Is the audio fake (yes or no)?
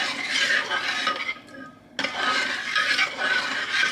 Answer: no